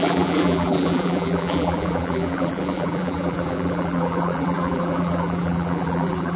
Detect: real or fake fake